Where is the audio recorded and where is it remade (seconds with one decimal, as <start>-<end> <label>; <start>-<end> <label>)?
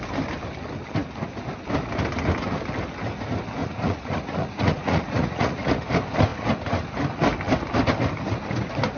0.0-3.6 recorded; 3.6-5.8 remade; 5.8-9.0 recorded